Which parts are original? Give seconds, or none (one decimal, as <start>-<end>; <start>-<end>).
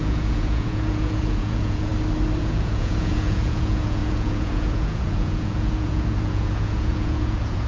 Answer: 1.9-2.4